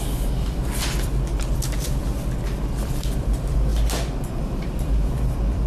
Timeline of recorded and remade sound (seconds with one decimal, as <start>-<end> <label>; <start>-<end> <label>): 0.0-2.0 remade; 2.0-2.7 recorded; 2.7-3.7 remade; 3.7-4.3 recorded; 4.3-5.7 remade